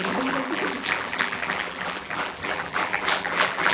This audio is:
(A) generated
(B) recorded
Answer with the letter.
A